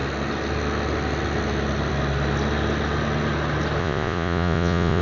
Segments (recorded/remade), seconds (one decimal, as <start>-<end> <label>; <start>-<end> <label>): 0.0-3.8 recorded; 3.8-5.0 remade